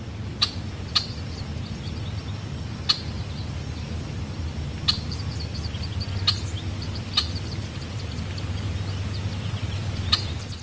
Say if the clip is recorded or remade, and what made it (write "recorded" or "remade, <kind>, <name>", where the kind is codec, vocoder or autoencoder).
recorded